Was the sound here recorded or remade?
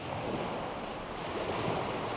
recorded